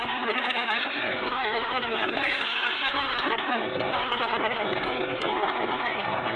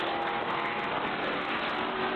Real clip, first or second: second